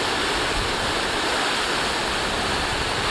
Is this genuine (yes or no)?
yes